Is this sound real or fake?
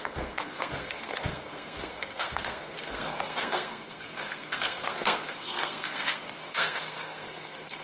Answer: fake